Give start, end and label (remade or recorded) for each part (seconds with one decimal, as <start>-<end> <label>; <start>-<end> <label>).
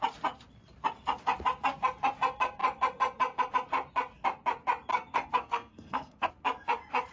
0.0-4.9 recorded; 4.9-6.3 remade; 6.3-7.1 recorded